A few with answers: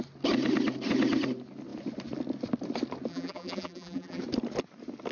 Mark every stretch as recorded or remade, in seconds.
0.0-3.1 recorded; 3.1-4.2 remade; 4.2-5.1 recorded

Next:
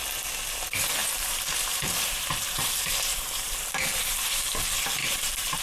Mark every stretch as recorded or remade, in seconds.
0.0-1.0 recorded; 1.0-4.4 remade; 4.4-5.0 recorded; 5.0-5.6 remade

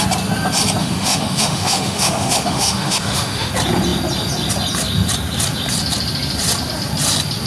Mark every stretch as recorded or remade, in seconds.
0.0-0.8 recorded; 0.8-3.5 remade; 3.5-7.5 recorded

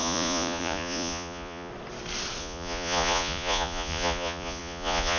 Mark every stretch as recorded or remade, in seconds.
0.0-1.7 remade; 1.7-2.4 recorded; 2.4-5.2 remade

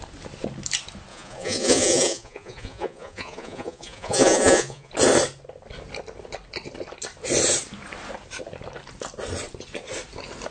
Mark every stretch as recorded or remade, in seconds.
0.0-1.1 recorded; 1.1-4.9 remade; 4.9-10.5 recorded